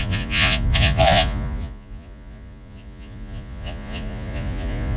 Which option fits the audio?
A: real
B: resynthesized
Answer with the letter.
B